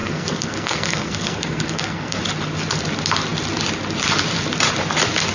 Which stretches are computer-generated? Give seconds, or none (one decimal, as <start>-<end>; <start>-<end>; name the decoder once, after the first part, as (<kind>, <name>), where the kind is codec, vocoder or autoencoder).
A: 0.0-2.2 (codec, SNAC)